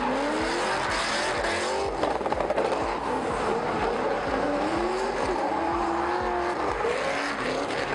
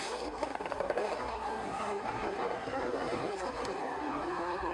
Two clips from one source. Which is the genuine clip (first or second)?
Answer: first